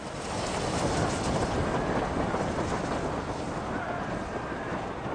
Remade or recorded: recorded